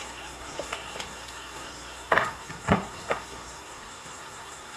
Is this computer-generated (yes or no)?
yes